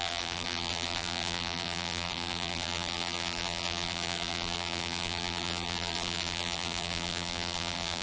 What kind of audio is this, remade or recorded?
remade